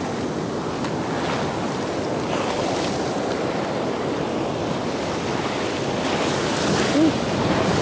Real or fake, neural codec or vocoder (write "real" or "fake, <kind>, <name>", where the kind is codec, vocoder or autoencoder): real